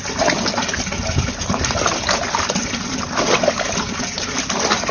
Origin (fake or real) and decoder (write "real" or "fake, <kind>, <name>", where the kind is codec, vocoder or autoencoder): real